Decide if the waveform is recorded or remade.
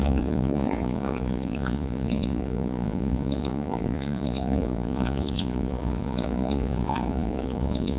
remade